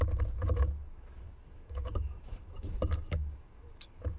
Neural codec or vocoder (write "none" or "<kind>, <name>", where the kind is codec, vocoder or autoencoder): autoencoder, DAC-VAE